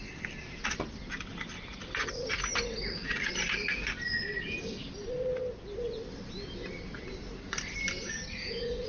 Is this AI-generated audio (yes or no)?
no